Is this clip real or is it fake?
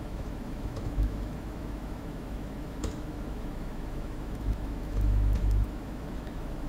fake